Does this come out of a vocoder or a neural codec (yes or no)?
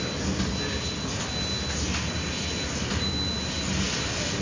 no